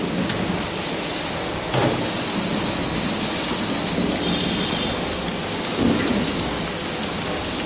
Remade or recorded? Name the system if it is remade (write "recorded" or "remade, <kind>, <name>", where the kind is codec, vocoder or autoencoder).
recorded